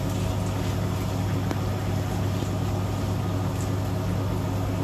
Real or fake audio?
real